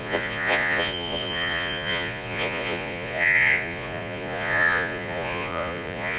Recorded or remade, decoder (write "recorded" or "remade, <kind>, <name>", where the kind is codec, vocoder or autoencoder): remade, vocoder, Vocos